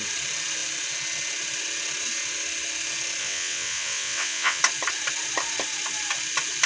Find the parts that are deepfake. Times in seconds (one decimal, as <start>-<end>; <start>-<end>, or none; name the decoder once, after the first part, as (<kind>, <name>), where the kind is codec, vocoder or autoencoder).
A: 3.2-4.6 (vocoder, WaveNeXt)